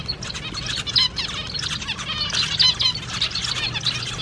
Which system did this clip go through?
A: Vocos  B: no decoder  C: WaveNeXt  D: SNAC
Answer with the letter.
B